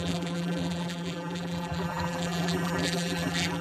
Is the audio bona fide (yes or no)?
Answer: no